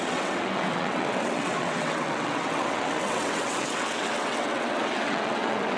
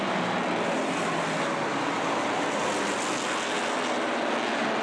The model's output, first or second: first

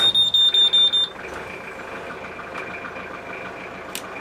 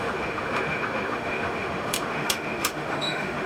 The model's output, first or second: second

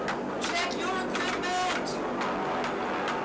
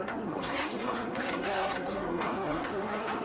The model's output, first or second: second